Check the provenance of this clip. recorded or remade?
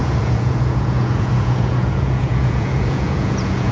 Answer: remade